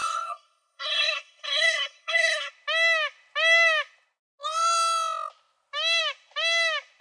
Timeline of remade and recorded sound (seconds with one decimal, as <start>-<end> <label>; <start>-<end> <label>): 0.0-2.5 remade; 2.5-7.0 recorded